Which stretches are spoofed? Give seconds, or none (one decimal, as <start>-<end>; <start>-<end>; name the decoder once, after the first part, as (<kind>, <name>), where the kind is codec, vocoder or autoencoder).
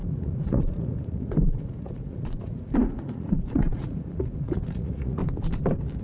0.0-5.2 (vocoder, Vocos)